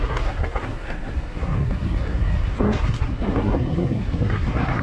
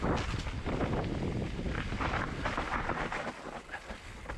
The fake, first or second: first